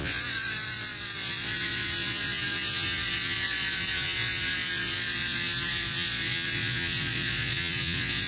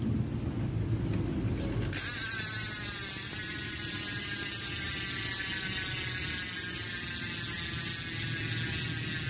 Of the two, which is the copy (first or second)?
first